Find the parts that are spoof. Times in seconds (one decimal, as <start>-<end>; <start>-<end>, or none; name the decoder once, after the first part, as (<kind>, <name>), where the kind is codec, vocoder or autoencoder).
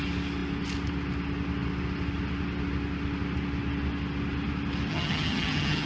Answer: 4.9-5.9 (vocoder, HiFi-GAN)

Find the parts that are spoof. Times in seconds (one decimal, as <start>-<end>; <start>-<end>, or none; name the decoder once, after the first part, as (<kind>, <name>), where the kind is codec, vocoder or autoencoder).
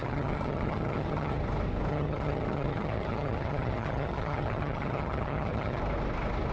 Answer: 0.0-1.4 (vocoder, HiFi-GAN); 1.9-5.8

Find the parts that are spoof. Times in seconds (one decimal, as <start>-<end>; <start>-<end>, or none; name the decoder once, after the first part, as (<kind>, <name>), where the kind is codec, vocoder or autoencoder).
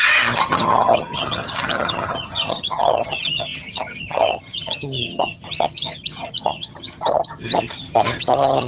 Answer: 0.0-8.7 (vocoder, HiFi-GAN)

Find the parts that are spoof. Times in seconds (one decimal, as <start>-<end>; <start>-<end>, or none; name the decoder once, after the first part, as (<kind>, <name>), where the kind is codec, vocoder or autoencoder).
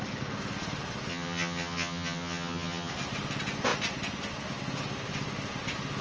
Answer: 1.1-2.9 (vocoder, HiFi-GAN)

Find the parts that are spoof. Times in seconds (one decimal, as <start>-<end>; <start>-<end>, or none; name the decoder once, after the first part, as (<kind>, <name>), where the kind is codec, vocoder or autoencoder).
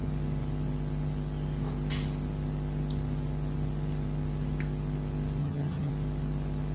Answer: 5.4-5.9 (vocoder, HiFi-GAN)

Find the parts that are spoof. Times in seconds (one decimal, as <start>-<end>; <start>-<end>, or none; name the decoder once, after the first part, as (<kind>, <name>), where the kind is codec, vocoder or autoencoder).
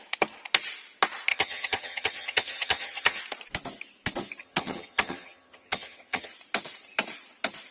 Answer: 1.3-3.2 (vocoder, HiFi-GAN); 4.4-6.3